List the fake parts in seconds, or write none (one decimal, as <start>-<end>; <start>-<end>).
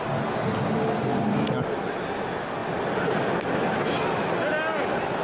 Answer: none